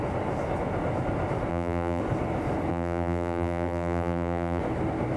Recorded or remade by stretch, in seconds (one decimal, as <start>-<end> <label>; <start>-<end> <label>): 0.0-1.5 recorded; 1.5-2.0 remade; 2.0-2.7 recorded; 2.7-4.6 remade; 4.6-5.2 recorded